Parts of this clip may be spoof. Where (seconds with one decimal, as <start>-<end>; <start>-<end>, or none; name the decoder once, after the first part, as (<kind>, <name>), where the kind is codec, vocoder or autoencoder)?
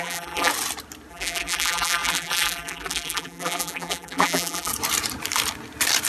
0.0-0.5 (vocoder, BigVGAN v2); 1.1-4.7